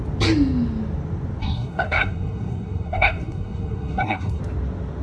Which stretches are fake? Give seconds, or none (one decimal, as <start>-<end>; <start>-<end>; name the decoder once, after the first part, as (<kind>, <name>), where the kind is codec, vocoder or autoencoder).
1.4-4.4 (codec, SNAC)